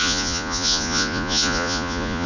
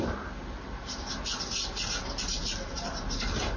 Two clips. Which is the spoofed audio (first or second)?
first